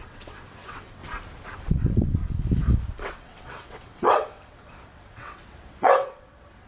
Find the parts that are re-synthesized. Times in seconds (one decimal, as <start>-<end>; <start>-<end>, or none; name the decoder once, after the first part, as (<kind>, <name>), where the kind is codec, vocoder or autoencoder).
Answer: 0.0-1.0 (vocoder, WaveNeXt); 1.7-2.2; 3.0-6.7